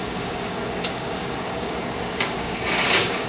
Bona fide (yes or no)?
no